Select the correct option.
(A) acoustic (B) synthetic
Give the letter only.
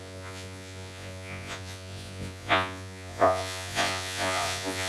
B